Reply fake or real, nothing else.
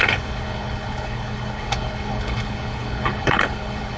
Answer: fake